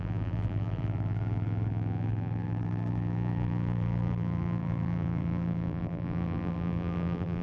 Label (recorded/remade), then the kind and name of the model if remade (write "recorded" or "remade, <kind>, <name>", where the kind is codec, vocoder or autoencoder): remade, vocoder, BigVGAN v2